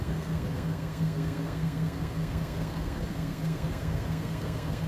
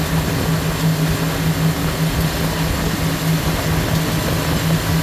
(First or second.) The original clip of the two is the second